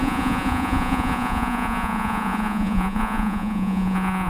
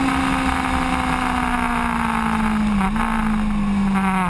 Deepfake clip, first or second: first